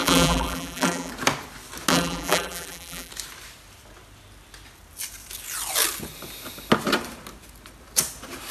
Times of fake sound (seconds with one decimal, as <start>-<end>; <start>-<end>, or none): 0.0-1.1; 1.9-3.1